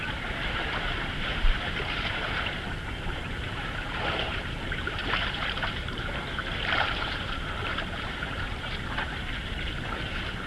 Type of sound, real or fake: fake